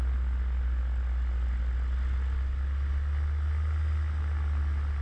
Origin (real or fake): real